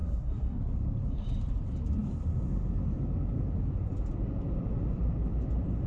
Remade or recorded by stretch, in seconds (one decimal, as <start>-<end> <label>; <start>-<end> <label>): 0.0-0.6 remade; 0.6-5.9 recorded